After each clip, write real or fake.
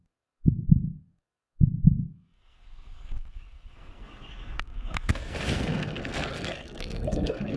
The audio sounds fake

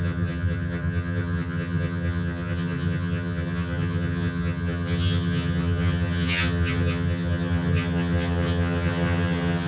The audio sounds fake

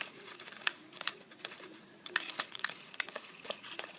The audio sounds fake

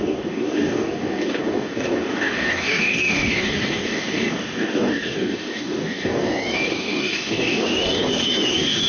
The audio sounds fake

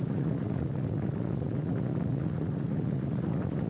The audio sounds fake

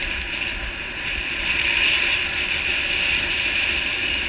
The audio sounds real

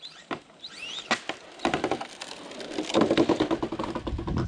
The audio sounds real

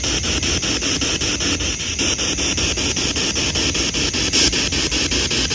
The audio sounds real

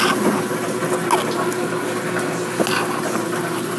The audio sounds real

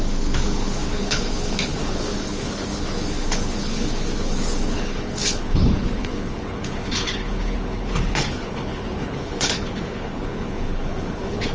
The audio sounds fake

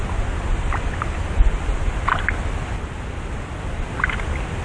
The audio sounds real